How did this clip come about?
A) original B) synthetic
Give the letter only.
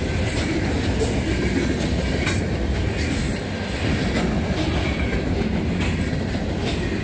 A